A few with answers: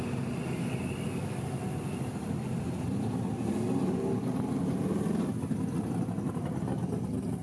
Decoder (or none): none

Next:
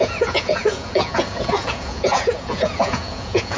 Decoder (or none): vocoder, Vocos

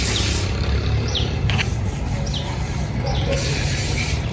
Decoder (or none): vocoder, BigVGAN v2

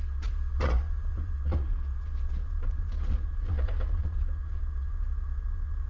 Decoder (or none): vocoder, Vocos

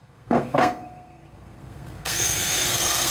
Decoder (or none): codec, SNAC